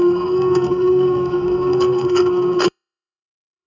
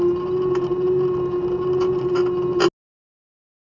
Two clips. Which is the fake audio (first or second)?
first